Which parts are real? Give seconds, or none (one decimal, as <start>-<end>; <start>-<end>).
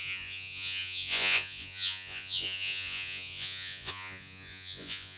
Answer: none